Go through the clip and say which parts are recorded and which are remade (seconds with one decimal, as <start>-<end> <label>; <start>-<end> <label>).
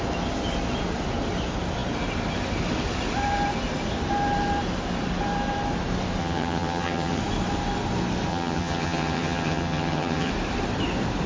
0.0-6.2 recorded; 6.2-7.2 remade; 7.2-8.3 recorded; 8.3-10.3 remade; 10.3-11.3 recorded